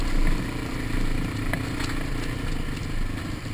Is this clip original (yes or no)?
yes